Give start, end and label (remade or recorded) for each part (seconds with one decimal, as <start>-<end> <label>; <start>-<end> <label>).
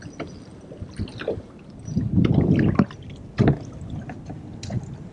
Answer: 0.0-5.1 recorded